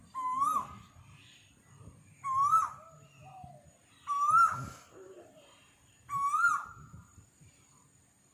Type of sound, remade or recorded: recorded